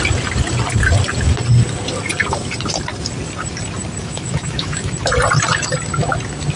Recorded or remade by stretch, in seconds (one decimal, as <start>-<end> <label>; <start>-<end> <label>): 0.0-4.0 recorded; 4.0-4.9 remade; 4.9-6.6 recorded